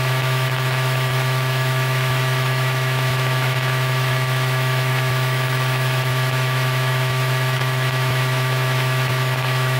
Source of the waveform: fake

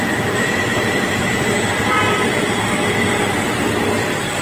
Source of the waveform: real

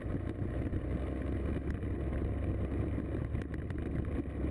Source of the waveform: real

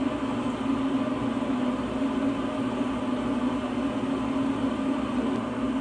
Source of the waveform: real